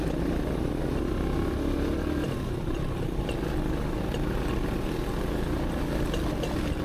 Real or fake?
real